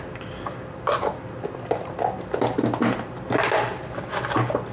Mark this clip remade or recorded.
recorded